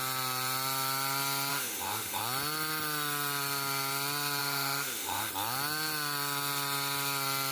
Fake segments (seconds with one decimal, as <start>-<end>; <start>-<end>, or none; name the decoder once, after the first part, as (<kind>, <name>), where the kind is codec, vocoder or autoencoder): 1.5-2.2 (autoencoder, DAC-VAE); 4.4-5.3

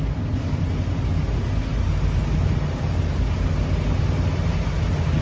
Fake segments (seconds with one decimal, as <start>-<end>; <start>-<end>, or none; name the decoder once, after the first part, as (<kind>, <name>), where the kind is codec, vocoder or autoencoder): none

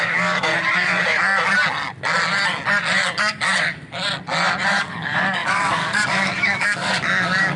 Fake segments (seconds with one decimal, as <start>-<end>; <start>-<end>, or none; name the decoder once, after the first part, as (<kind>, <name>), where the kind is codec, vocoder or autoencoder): 0.0-0.5 (codec, DAC); 4.8-7.6

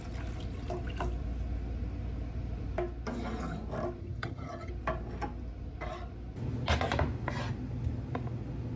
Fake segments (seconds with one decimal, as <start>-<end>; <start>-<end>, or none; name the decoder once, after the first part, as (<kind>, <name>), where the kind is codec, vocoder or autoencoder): 4.0-4.7 (vocoder, HiFi-GAN)

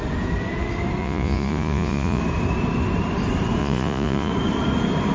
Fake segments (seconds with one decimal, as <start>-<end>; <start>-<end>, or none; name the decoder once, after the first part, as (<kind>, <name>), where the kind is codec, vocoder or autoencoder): 1.0-2.2 (vocoder, Vocos); 3.6-4.3

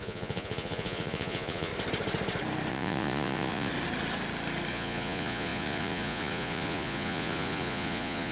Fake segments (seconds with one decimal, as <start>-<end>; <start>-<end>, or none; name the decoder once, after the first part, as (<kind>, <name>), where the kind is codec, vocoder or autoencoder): 0.0-1.7 (vocoder, Vocos); 2.7-3.7; 4.7-8.3

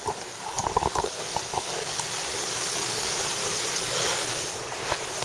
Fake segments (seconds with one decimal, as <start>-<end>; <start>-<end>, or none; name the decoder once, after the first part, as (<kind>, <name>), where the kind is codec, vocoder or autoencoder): 0.0-3.1 (codec, DAC); 3.7-4.4

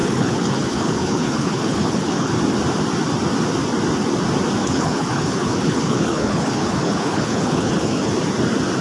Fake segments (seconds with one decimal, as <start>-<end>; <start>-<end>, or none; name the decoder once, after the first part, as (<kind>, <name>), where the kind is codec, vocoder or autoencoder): 0.0-2.3 (codec, HILCodec); 4.6-8.1